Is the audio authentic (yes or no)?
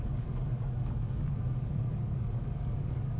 no